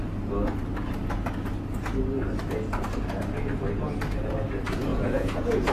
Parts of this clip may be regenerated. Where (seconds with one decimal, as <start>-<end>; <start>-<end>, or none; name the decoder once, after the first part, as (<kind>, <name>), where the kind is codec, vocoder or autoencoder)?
4.9-5.7 (vocoder, Vocos)